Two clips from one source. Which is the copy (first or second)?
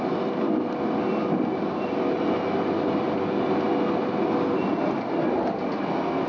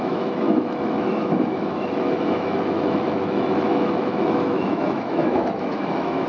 second